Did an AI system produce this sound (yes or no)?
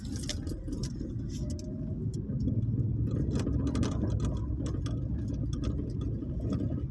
no